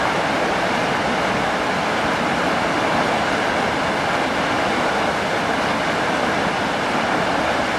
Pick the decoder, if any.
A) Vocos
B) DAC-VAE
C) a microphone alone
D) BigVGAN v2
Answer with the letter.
C